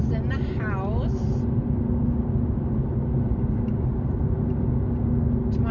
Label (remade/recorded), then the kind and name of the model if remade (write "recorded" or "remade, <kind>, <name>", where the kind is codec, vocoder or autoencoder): recorded